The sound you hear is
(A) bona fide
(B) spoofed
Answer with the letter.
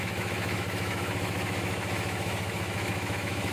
B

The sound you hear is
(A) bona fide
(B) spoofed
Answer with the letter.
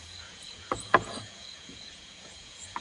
B